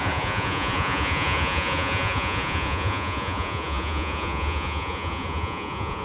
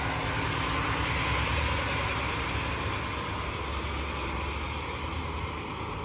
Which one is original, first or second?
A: second